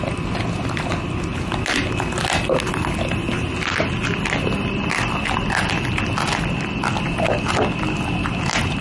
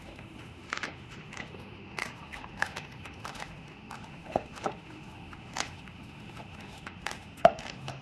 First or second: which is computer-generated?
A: second